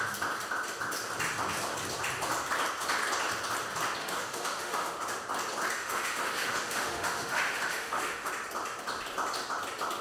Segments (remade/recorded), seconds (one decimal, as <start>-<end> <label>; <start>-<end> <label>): 0.0-4.0 recorded; 4.0-5.0 remade; 5.0-5.8 recorded; 5.8-8.3 remade; 8.3-10.0 recorded